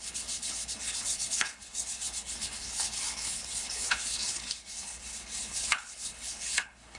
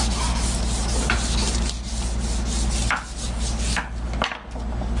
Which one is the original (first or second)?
second